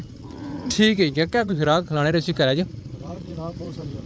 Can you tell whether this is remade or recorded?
remade